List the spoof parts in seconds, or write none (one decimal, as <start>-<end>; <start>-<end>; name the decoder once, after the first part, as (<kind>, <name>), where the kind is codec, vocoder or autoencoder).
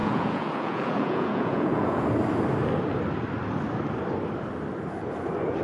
0.0-2.0 (vocoder, Vocos)